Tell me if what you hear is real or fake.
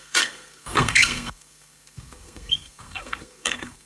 fake